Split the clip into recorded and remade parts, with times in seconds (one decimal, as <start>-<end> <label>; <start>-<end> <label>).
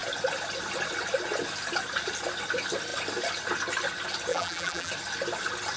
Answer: 0.0-4.3 recorded; 4.3-4.9 remade; 4.9-5.8 recorded